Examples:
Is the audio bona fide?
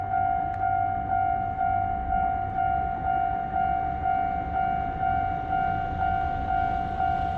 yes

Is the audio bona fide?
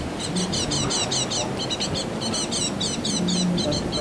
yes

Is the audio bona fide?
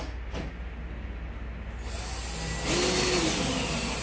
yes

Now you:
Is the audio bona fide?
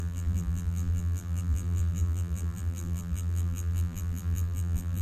no